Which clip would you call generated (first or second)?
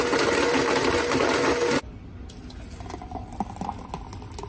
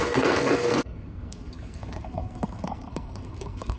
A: second